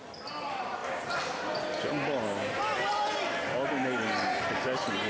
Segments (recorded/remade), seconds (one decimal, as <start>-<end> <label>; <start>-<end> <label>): 0.0-5.1 recorded